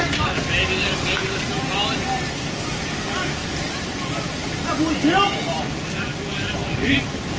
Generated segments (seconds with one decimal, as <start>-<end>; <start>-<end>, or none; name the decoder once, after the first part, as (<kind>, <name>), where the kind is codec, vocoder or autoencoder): 6.1-6.8 (vocoder, BigVGAN v2)